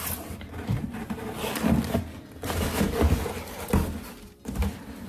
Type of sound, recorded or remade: recorded